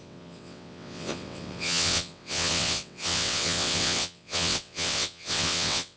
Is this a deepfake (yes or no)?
yes